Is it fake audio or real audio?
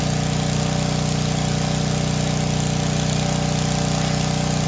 real